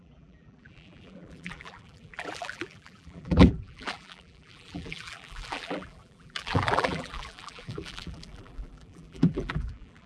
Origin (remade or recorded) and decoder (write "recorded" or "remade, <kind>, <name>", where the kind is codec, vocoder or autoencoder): remade, vocoder, BigVGAN v2